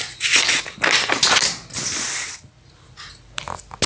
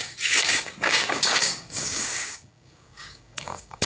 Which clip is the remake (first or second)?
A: second